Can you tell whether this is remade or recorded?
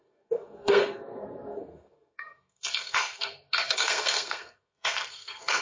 remade